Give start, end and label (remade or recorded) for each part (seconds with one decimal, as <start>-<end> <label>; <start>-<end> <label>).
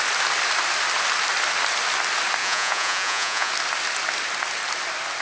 0.0-2.4 recorded; 2.4-3.5 remade; 3.5-5.2 recorded